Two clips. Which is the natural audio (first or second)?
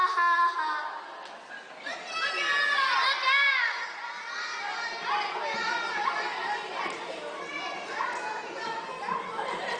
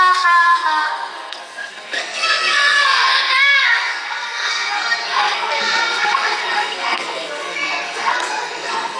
first